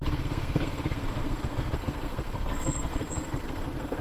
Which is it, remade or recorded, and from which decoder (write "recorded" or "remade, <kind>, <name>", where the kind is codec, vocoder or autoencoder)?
remade, codec, SNAC